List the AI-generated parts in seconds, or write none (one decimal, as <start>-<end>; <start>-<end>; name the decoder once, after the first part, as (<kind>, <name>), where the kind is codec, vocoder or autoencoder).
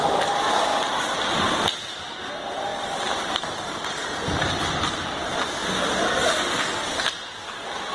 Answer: 2.7-5.1 (vocoder, BigVGAN v2)